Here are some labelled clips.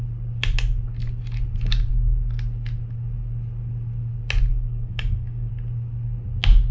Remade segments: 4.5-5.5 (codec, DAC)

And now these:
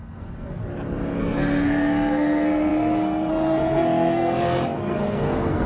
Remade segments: 0.0-0.6 (codec, SNAC); 1.2-5.7

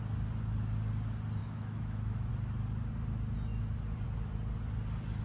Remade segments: 1.4-2.3 (autoencoder, DAC-VAE)